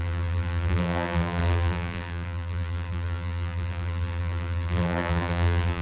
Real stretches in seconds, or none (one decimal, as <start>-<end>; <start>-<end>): none